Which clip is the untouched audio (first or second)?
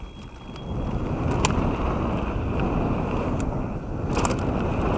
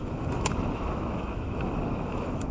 first